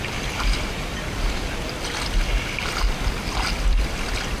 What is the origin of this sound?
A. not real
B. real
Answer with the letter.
B